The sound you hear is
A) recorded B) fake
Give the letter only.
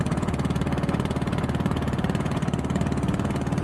B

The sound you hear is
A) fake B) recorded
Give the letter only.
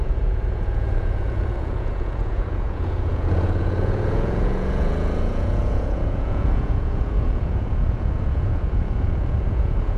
A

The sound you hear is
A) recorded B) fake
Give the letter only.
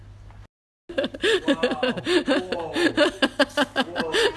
A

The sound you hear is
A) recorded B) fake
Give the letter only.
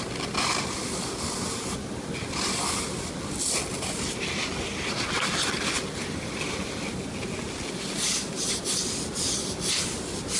A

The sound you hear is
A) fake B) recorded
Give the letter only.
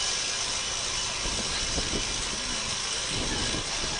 B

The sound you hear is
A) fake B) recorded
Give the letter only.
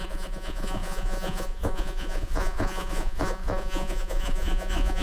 A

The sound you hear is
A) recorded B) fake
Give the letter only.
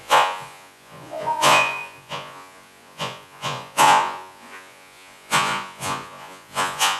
B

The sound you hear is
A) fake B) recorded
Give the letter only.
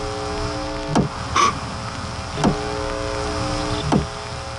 B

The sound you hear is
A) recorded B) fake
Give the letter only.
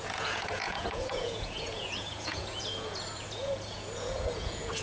B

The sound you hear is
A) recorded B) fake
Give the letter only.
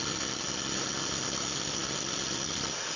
A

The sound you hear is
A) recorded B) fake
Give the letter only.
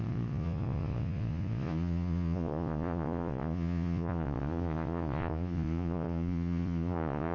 B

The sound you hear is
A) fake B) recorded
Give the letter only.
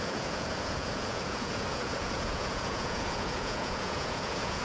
A